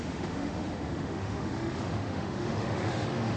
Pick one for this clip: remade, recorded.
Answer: remade